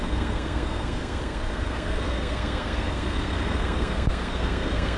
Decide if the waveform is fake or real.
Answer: fake